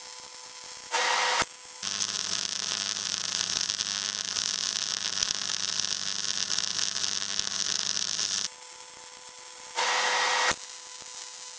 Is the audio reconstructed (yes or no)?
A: no